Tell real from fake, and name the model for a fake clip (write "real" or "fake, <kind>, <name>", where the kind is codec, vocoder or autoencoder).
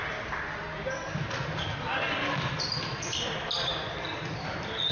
real